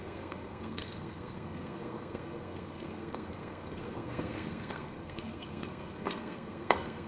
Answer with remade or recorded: remade